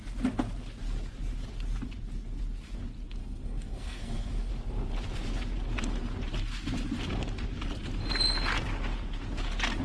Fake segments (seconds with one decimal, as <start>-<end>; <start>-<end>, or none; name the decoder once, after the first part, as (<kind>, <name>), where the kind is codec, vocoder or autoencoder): 3.2-4.5 (codec, SNAC)